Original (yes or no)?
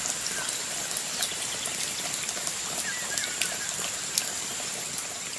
yes